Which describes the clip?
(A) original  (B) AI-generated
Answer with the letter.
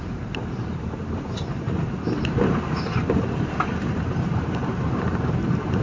B